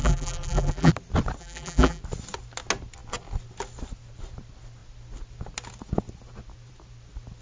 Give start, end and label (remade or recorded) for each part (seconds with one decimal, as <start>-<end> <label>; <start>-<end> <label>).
0.0-0.9 remade; 0.9-1.4 recorded; 1.4-2.0 remade; 2.0-7.4 recorded